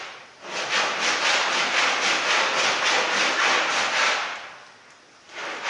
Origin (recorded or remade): recorded